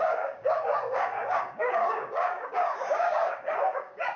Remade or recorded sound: remade